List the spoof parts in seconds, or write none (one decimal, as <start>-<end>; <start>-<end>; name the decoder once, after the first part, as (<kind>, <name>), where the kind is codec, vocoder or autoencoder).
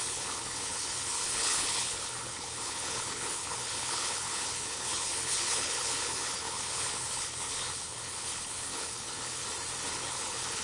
0.0-9.4 (codec, HILCodec); 9.9-10.6